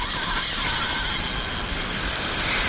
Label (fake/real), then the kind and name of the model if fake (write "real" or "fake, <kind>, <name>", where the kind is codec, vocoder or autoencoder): real